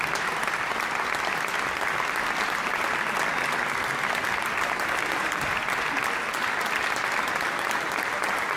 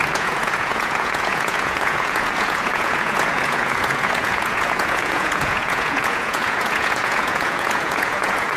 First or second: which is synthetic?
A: second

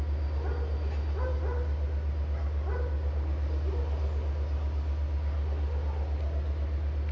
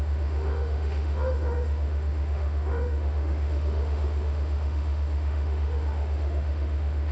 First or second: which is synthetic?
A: second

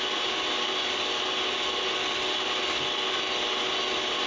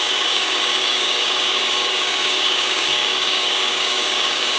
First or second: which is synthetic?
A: second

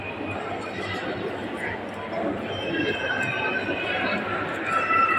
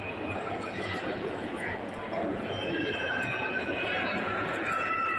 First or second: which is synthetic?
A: second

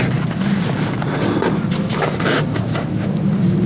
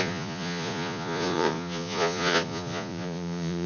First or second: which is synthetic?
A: second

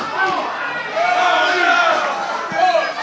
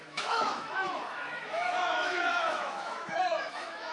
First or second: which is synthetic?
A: second